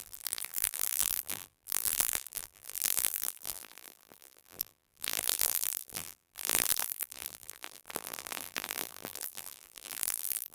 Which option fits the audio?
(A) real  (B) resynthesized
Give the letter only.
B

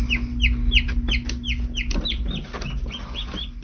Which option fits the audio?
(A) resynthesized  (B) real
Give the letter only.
B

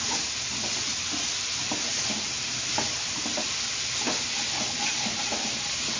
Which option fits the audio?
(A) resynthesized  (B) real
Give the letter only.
B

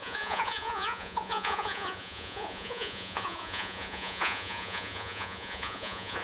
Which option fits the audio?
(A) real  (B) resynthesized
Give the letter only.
B